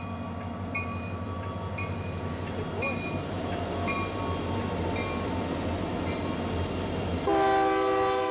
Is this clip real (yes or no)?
yes